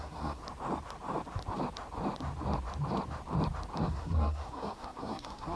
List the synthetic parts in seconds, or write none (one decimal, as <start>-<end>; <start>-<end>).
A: 0.0-0.4; 3.8-5.6